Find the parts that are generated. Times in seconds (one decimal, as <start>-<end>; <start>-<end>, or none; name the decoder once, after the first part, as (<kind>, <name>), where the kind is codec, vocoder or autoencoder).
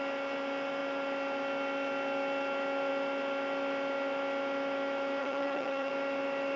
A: 5.2-5.9 (vocoder, HiFi-GAN)